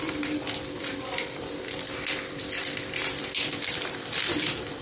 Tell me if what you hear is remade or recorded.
remade